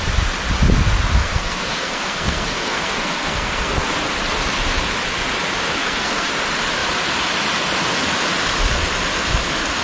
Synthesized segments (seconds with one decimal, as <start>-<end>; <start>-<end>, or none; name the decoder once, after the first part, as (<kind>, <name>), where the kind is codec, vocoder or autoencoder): 1.2-3.9 (codec, SNAC); 5.8-6.3